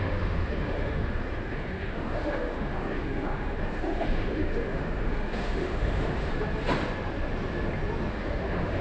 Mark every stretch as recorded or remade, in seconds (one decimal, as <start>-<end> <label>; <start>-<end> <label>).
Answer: 0.0-6.3 remade; 6.3-8.1 recorded; 8.1-8.8 remade